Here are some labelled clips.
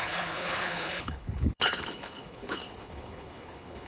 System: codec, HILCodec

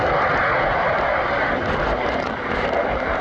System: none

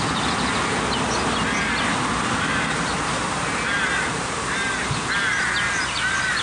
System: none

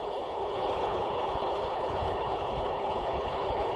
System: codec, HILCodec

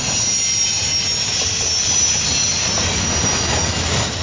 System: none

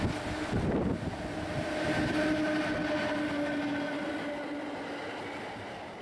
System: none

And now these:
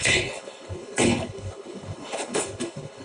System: codec, HILCodec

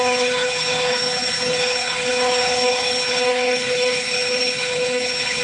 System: codec, HILCodec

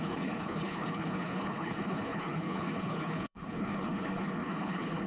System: codec, HILCodec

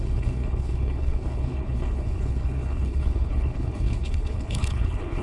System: codec, HILCodec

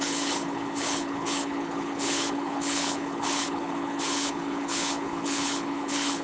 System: codec, HILCodec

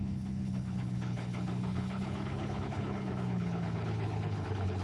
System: codec, HILCodec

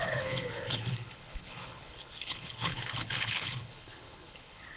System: codec, HILCodec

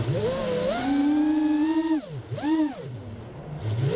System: none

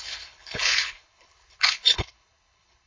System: codec, HILCodec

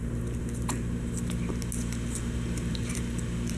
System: none